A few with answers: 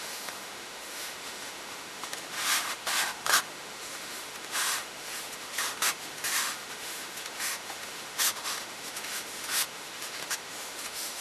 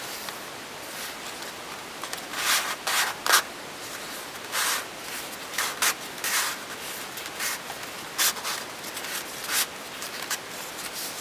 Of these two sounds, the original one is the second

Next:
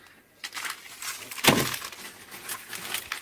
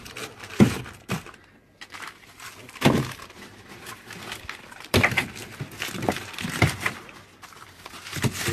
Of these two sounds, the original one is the first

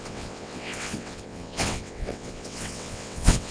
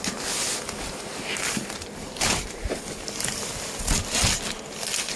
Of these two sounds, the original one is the second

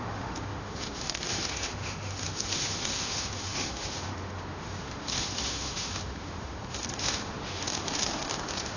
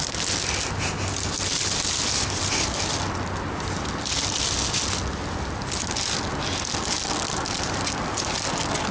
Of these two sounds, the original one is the second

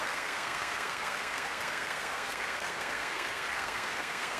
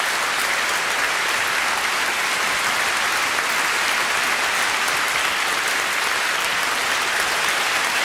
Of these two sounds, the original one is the second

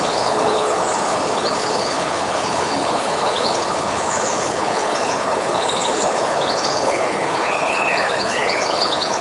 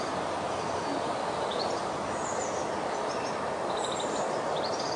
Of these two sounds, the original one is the second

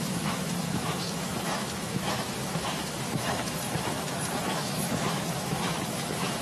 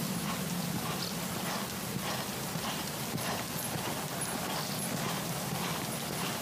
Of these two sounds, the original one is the second